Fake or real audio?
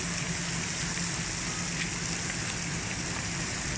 real